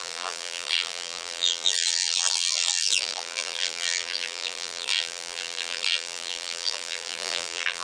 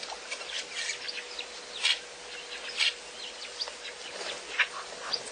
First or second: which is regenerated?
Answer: first